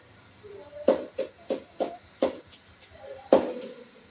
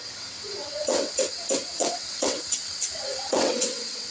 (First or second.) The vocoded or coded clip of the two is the second